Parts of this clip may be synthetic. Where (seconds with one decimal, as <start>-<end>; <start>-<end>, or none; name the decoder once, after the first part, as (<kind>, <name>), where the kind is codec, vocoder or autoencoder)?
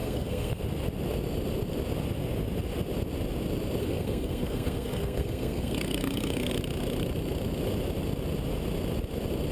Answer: 0.0-0.6 (codec, SNAC); 3.8-6.5